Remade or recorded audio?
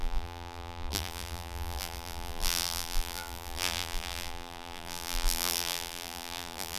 remade